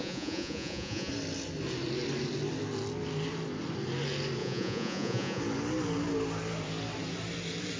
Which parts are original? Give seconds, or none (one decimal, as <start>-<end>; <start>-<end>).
1.1-4.4; 5.4-7.8